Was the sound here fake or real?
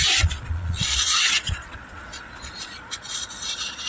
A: fake